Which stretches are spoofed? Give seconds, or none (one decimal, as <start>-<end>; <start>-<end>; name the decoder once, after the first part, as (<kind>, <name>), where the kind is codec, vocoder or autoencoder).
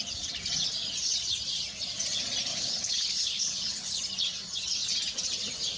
2.5-4.0 (codec, HILCodec)